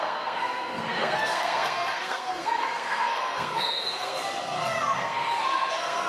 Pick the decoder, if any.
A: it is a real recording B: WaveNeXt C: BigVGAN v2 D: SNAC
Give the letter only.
D